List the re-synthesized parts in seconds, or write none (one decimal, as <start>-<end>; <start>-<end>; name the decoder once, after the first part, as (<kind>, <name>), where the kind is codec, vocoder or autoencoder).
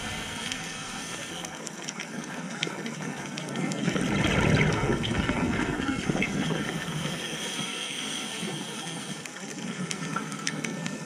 0.0-4.0 (codec, SNAC); 4.7-11.1